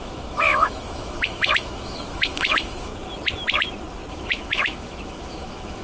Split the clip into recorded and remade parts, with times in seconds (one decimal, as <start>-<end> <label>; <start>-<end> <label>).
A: 0.0-2.9 remade; 2.9-4.1 recorded; 4.1-5.8 remade